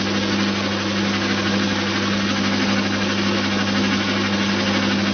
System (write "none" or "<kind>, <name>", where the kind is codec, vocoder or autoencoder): none